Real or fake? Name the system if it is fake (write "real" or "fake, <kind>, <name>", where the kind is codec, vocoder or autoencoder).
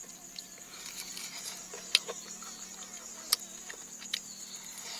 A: real